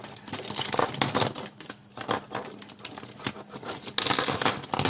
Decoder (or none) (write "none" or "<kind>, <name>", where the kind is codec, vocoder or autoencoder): none